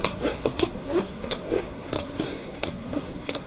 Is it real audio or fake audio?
fake